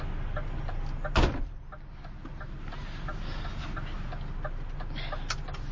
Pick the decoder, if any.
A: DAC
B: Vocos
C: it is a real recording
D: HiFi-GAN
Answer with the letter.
C